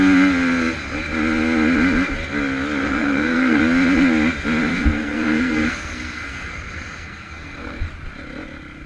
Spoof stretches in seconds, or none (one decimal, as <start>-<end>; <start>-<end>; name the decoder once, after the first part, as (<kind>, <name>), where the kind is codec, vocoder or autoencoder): 2.8-3.6 (codec, SNAC); 4.7-7.8